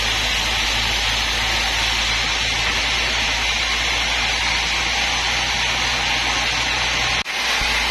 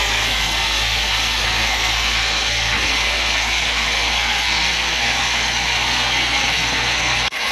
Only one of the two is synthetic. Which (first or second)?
second